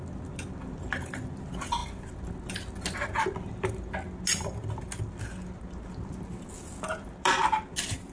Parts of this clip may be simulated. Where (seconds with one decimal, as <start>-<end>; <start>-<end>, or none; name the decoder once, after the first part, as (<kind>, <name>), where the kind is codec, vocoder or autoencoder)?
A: none

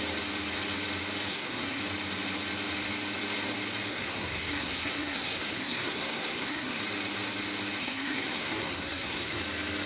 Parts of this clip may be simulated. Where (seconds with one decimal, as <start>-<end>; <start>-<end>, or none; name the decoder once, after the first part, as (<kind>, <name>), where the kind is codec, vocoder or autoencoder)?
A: 1.3-1.8 (codec, SNAC); 3.9-6.8; 7.8-9.4